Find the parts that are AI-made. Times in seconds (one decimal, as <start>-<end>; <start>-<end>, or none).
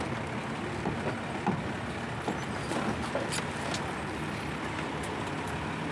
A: none